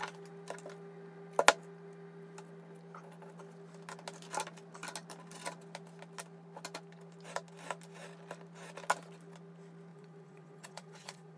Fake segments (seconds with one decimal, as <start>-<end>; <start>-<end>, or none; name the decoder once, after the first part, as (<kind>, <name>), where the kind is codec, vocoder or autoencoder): 9.9-11.4 (vocoder, Vocos)